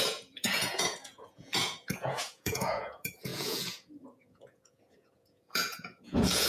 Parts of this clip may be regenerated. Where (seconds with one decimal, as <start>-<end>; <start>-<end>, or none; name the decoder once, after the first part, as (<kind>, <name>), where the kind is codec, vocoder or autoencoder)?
0.0-6.5 (vocoder, Vocos)